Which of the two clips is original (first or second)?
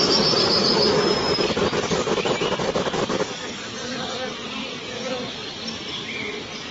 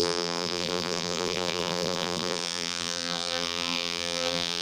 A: first